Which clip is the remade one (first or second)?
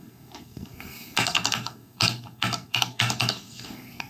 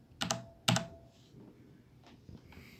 first